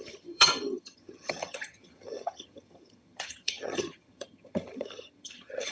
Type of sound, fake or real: fake